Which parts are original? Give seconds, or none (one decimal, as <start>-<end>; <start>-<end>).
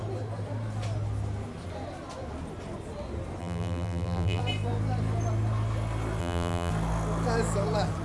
0.0-3.4; 4.4-6.2; 6.7-8.0